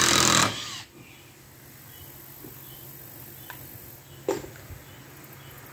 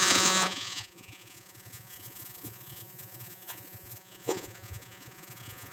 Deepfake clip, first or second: second